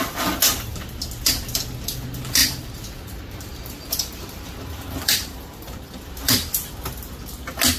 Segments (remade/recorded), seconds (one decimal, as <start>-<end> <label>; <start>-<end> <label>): 0.0-2.4 recorded; 2.4-6.1 remade; 6.1-7.8 recorded